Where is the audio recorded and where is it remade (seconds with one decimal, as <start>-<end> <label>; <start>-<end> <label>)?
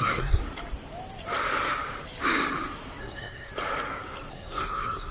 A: 0.0-0.4 remade; 0.4-3.0 recorded; 3.0-3.5 remade; 3.5-4.3 recorded; 4.3-5.1 remade